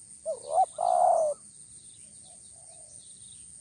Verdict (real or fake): real